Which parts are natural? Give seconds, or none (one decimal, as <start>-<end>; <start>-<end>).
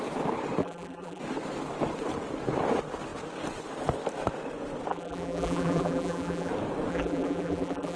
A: 0.0-0.6; 1.2-4.9; 6.5-6.9